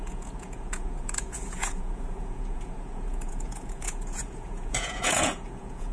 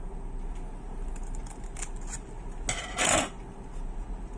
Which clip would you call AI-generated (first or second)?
first